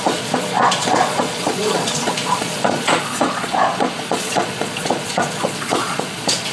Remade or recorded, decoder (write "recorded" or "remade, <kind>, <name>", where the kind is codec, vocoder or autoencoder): remade, vocoder, Vocos